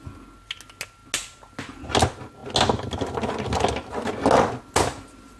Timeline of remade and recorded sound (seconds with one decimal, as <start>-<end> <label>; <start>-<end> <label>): 0.0-5.4 recorded